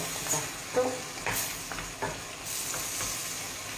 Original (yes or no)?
yes